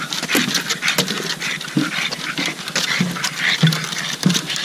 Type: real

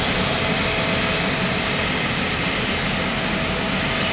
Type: real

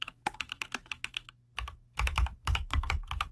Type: fake